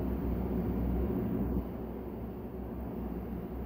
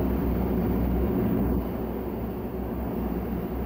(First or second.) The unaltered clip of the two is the first